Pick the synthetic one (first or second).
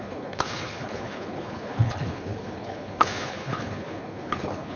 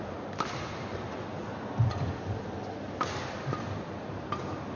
first